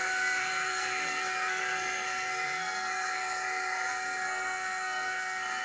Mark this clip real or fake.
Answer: fake